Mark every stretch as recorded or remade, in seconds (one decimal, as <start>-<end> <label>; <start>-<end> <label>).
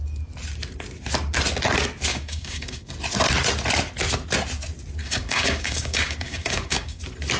0.0-2.1 recorded; 2.1-2.9 remade; 2.9-5.0 recorded; 5.0-7.0 remade; 7.0-7.4 recorded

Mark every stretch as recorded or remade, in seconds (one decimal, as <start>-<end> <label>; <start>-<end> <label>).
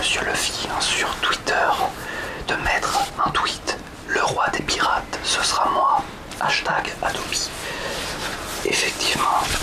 0.0-9.6 recorded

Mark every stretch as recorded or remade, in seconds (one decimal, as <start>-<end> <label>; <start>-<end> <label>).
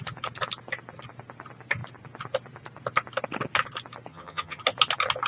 0.0-4.1 recorded; 4.1-4.6 remade; 4.6-5.3 recorded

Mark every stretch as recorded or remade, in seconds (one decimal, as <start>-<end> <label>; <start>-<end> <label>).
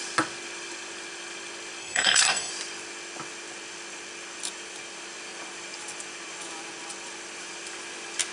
0.0-1.8 recorded; 1.8-2.5 remade; 2.5-8.3 recorded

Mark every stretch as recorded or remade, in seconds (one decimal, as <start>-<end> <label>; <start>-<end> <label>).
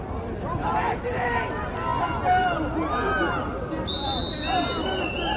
0.0-5.4 recorded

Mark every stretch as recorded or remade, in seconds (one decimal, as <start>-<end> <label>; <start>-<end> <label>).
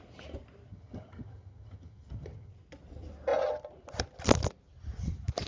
0.0-0.7 recorded; 0.7-2.5 remade; 2.5-5.5 recorded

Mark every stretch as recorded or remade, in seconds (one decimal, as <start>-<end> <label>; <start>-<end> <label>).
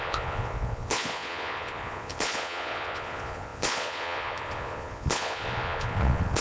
0.0-6.4 remade